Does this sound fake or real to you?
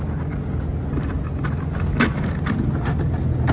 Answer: real